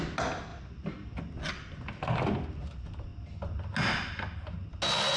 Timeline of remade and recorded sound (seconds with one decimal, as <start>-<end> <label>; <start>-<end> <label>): 0.0-5.2 recorded